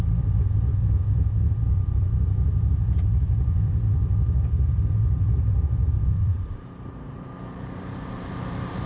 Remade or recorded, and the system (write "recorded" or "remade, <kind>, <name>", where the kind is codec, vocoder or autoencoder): remade, vocoder, BigVGAN v2